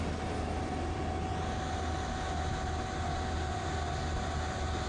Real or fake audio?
real